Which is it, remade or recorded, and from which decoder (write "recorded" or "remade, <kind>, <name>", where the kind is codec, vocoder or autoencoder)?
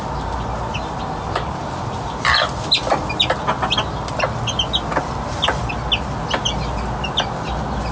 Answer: recorded